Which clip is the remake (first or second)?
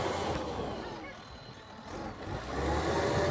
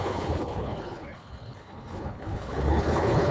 second